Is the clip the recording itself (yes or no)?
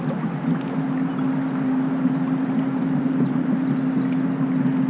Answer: yes